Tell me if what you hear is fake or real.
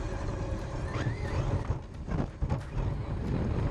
real